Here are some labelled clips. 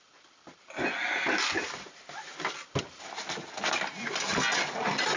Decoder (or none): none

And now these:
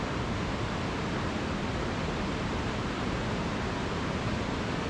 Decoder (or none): none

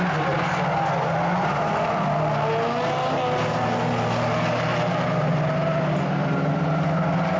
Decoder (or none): none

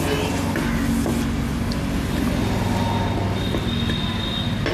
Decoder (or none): none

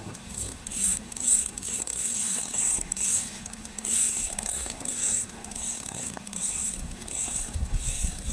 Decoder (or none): codec, SNAC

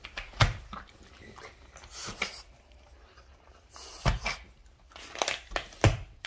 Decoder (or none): none